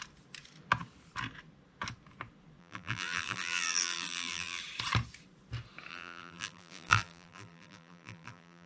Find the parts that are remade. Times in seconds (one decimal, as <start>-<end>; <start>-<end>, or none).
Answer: 2.6-4.6; 5.9-8.7